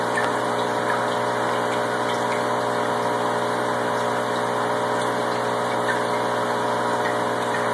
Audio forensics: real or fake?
real